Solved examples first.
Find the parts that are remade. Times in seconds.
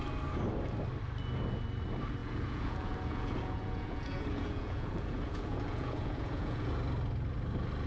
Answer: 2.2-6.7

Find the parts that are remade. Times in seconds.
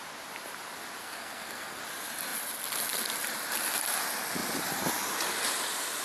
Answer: 1.0-1.8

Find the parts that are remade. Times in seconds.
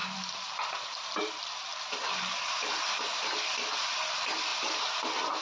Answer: 0.0-3.2; 4.5-5.0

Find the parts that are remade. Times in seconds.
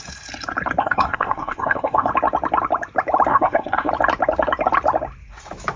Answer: 0.8-2.1; 3.3-3.9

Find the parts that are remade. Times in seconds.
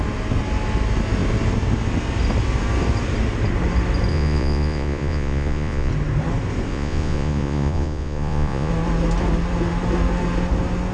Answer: 4.1-5.9; 6.7-8.7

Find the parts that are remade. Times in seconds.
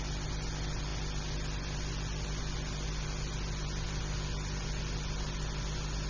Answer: none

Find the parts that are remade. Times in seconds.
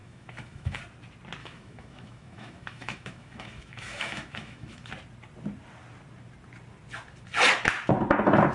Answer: 0.0-0.8; 1.4-4.9